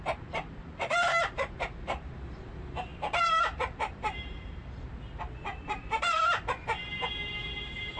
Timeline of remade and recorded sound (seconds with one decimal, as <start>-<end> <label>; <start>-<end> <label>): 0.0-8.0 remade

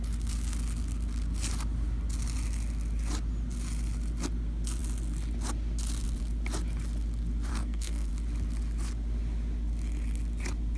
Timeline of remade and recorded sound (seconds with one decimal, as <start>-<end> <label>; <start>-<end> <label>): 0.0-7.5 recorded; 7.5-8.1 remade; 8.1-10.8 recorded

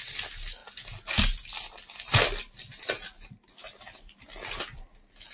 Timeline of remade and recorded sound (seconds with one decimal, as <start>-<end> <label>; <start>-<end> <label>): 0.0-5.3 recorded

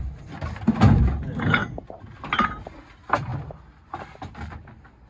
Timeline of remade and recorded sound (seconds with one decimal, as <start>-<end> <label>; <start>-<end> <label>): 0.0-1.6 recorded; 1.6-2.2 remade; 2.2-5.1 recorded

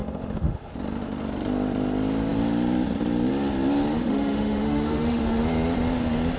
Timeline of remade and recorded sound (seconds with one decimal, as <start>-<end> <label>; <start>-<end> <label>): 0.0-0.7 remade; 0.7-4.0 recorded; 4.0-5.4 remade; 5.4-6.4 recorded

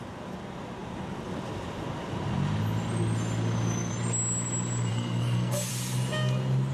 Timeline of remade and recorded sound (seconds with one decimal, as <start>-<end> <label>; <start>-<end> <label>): 0.0-4.9 recorded; 4.9-5.7 remade; 5.7-6.7 recorded

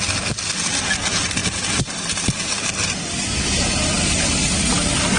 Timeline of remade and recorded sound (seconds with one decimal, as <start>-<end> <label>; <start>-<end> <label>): 0.0-5.2 recorded

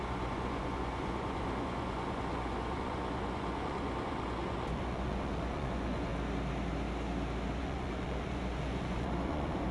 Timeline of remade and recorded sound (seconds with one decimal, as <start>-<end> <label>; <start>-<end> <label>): 0.0-6.1 remade; 6.1-7.6 recorded; 7.6-9.7 remade